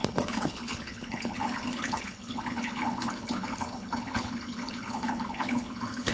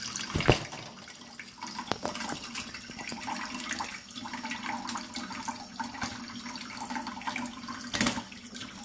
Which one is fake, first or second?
first